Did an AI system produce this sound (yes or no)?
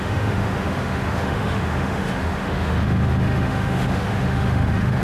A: yes